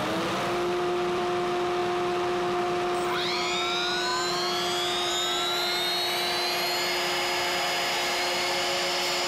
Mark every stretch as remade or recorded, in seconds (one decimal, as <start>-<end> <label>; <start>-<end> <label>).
0.0-9.3 recorded